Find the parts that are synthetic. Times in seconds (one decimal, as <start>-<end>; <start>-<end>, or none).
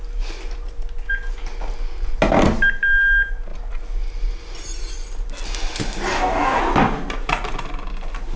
6.1-6.6